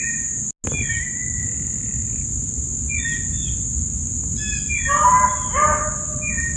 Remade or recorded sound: recorded